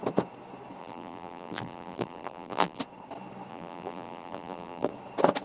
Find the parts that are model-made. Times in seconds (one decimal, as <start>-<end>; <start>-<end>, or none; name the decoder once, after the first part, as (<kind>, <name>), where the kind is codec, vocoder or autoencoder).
0.8-2.8 (vocoder, BigVGAN v2); 3.5-4.9